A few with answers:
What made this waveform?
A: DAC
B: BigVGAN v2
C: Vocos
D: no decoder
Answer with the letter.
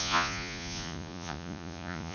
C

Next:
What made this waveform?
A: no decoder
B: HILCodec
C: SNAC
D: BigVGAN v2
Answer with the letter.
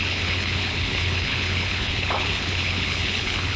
B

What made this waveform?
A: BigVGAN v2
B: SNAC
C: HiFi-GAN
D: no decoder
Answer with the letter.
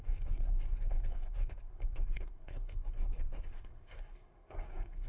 B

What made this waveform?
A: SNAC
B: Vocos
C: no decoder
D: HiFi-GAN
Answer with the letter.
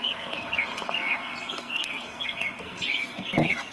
A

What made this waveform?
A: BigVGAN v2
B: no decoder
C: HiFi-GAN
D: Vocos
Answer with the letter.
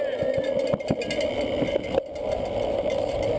B